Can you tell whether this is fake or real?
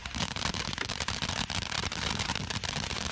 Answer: fake